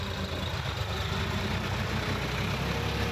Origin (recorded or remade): recorded